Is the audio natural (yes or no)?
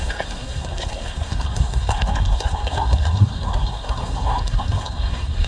no